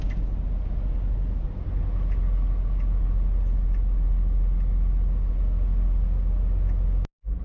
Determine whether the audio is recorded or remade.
recorded